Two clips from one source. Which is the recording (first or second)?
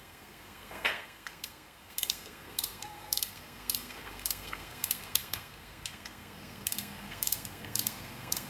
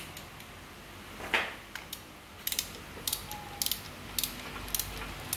second